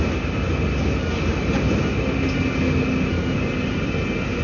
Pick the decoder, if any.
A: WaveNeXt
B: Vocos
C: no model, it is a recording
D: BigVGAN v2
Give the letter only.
C